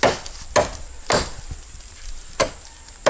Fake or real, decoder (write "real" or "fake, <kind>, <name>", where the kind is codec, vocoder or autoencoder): real